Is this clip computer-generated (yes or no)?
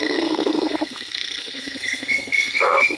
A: yes